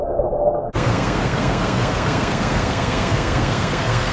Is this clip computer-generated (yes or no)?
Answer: yes